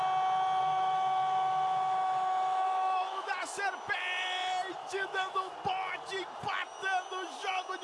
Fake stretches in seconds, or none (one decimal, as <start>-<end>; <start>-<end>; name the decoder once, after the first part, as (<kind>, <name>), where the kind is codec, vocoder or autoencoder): 0.6-3.3 (autoencoder, DAC-VAE); 4.8-5.5